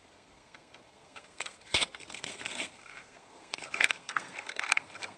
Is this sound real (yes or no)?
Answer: no